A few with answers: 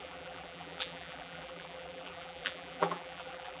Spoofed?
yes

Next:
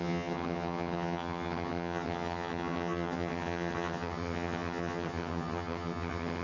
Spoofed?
yes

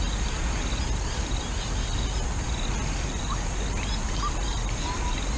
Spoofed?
no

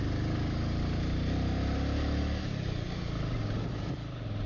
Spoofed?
no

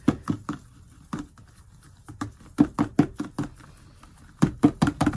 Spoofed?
no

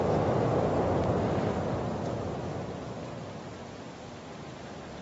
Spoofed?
no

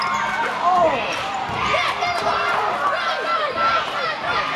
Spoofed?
no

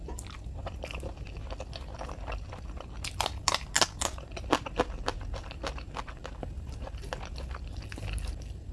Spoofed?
no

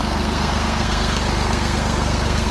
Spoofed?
yes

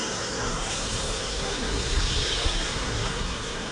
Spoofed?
yes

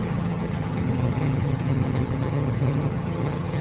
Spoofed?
yes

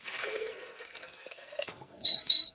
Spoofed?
yes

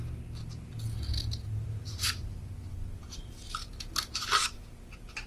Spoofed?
no